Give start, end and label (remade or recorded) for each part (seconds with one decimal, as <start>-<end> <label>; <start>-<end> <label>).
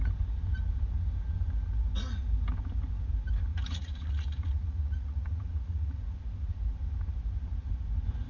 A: 0.0-3.5 recorded; 3.5-6.0 remade; 6.0-8.3 recorded